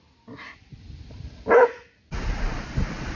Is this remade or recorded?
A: recorded